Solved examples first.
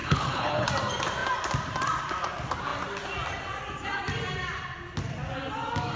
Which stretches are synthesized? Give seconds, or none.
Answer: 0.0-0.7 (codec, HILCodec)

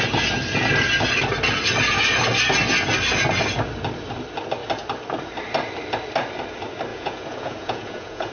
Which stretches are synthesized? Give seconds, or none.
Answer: 6.9-8.3 (vocoder, Vocos)

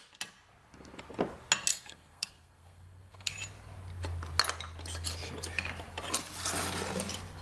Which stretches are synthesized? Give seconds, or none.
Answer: 1.7-3.3 (codec, SNAC)

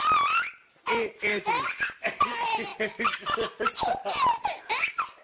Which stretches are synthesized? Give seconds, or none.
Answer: none

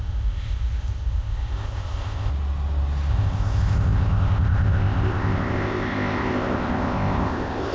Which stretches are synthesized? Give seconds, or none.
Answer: 0.0-2.3 (codec, ZipCodec); 3.1-7.7